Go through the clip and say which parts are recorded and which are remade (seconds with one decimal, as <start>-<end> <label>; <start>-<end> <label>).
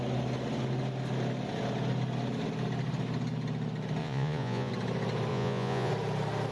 0.0-4.0 recorded; 4.0-4.7 remade; 4.7-5.3 recorded; 5.3-5.9 remade; 5.9-6.5 recorded